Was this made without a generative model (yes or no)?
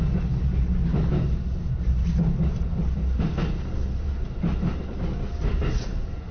yes